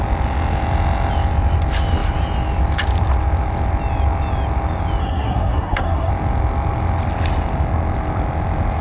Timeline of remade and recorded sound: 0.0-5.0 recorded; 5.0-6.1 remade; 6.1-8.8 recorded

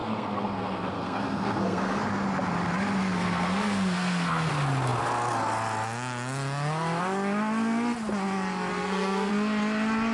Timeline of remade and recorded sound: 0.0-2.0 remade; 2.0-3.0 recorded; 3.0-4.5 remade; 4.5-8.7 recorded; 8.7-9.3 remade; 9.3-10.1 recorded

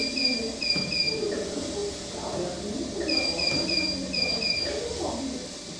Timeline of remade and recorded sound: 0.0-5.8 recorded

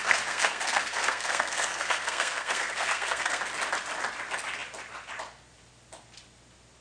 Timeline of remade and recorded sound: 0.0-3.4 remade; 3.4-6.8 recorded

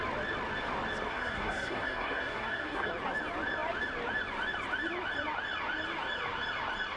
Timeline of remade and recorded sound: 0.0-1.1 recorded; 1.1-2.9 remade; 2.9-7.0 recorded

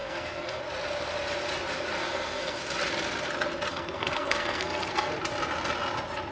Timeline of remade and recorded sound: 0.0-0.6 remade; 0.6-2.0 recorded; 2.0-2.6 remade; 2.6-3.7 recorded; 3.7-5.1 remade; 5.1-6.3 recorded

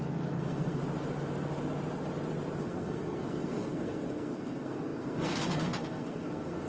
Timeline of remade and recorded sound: 0.0-0.8 remade; 0.8-2.6 recorded; 2.6-6.7 remade